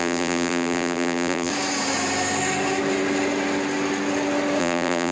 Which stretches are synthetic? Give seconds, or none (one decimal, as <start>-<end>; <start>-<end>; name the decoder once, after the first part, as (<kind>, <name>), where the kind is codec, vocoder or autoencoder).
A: 0.0-1.5 (vocoder, BigVGAN v2); 4.6-5.1